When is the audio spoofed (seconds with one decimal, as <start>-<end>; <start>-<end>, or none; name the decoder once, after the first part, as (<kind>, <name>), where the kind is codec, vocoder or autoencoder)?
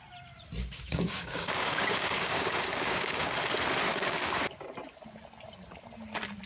0.6-3.5 (codec, DAC); 3.9-4.4